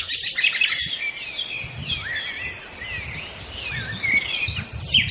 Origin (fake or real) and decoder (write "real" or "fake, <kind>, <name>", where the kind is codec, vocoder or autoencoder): real